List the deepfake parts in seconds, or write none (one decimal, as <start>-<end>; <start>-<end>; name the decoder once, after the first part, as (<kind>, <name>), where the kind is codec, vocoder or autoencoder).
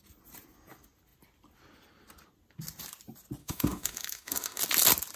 3.4-4.6 (autoencoder, DAC-VAE)